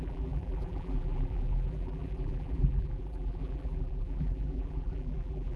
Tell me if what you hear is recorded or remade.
remade